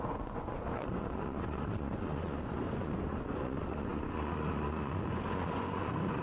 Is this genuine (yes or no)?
no